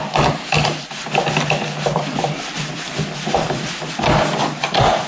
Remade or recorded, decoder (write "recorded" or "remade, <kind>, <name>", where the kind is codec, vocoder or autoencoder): recorded